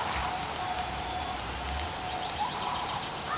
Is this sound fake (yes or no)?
no